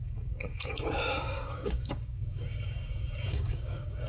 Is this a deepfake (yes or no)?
yes